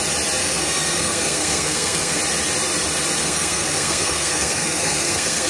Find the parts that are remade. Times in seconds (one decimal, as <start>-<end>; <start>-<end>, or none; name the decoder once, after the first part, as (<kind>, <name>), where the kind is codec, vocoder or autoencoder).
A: 0.4-2.2 (codec, SNAC); 3.2-5.5